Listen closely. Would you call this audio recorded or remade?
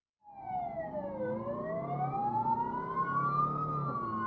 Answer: recorded